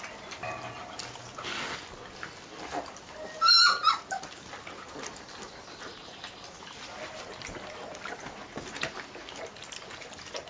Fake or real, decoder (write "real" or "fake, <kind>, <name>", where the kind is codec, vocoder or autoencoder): real